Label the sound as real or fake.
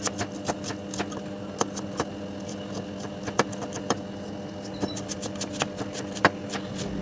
real